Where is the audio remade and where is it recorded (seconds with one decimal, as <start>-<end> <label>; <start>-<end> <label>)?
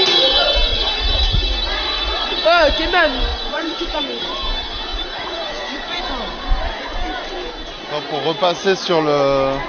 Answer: 0.0-0.7 recorded; 0.7-2.7 remade; 2.7-3.3 recorded; 3.3-4.0 remade; 4.0-4.9 recorded; 4.9-6.0 remade; 6.0-9.7 recorded